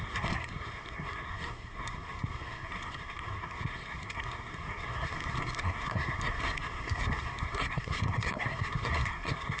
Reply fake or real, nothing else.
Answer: fake